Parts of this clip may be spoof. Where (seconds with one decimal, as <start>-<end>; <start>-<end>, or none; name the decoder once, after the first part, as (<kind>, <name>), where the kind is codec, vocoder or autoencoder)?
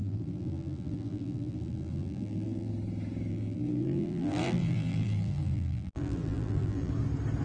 0.0-2.7 (vocoder, BigVGAN v2); 3.3-6.9